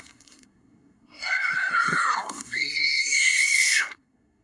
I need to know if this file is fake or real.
fake